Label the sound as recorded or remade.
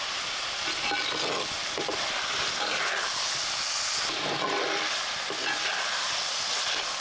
recorded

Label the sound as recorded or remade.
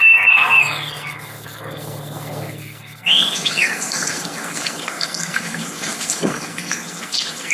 remade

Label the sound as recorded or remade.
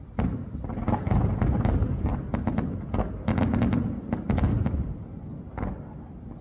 recorded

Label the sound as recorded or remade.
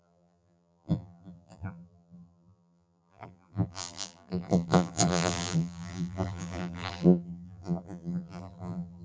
remade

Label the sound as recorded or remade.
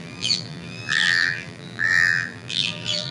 remade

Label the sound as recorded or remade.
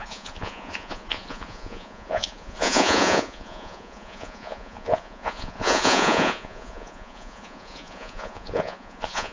remade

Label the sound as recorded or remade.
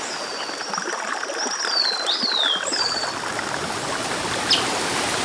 recorded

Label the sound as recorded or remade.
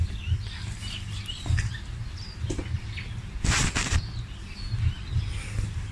recorded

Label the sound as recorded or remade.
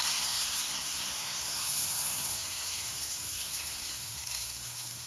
remade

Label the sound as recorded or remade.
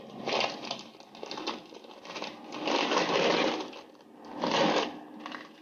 recorded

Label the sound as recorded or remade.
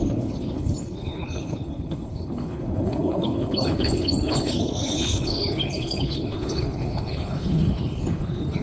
remade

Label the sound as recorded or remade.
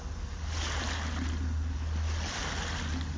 recorded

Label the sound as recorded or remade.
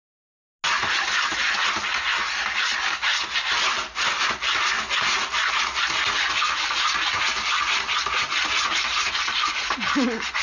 recorded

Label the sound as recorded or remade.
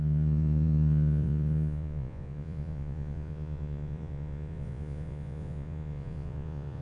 remade